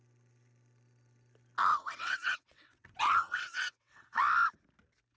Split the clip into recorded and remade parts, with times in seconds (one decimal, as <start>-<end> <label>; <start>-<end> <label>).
0.0-1.6 recorded; 1.6-4.2 remade; 4.2-5.2 recorded